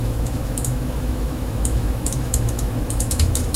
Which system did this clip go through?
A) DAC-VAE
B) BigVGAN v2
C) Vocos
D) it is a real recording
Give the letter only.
A